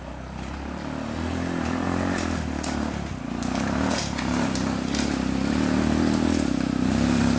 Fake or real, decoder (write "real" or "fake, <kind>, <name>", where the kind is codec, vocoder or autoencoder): real